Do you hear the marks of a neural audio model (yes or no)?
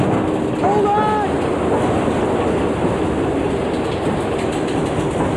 no